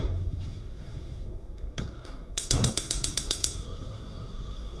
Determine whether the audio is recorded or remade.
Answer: remade